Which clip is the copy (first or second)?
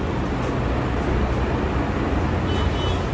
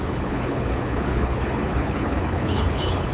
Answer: second